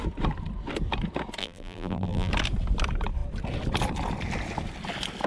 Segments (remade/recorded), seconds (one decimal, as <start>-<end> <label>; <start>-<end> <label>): 0.0-1.4 recorded; 1.4-2.3 remade; 2.3-5.3 recorded